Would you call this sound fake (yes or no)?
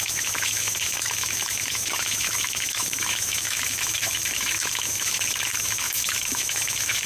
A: yes